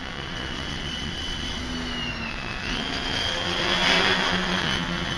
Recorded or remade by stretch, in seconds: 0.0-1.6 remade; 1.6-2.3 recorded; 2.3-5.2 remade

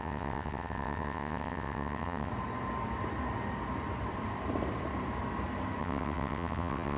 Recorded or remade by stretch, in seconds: 0.0-2.3 remade; 2.3-5.8 recorded; 5.8-7.0 remade

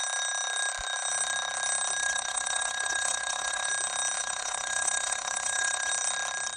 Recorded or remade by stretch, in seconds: 0.0-2.0 recorded; 2.0-3.7 remade; 3.7-4.2 recorded; 4.2-5.9 remade; 5.9-6.6 recorded

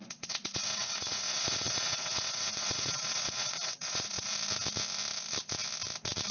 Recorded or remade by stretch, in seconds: 0.0-4.3 remade; 4.3-6.3 recorded

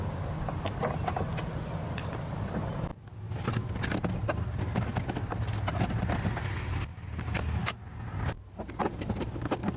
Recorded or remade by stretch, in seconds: 0.0-9.8 recorded

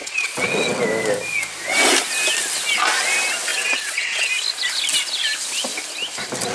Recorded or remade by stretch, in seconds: 0.0-0.8 remade; 0.8-3.5 recorded; 3.5-4.3 remade; 4.3-6.5 recorded

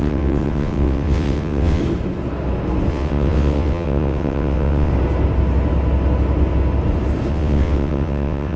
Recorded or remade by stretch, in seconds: 0.0-1.8 remade; 1.8-2.9 recorded; 2.9-4.9 remade; 4.9-7.3 recorded; 7.3-8.6 remade